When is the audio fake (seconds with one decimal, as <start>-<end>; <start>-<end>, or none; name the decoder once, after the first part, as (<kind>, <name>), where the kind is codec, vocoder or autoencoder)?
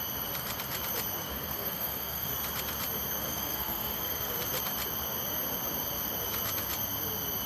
1.2-2.3 (codec, SNAC); 3.2-4.4